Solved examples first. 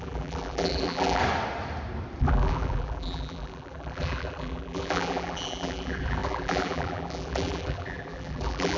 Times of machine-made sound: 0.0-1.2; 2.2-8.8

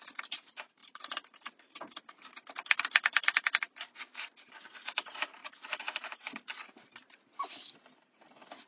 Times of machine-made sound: 0.0-6.5